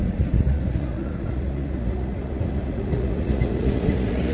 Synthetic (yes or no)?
yes